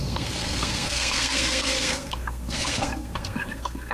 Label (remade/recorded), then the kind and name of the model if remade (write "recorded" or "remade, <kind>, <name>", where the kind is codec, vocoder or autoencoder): remade, codec, SNAC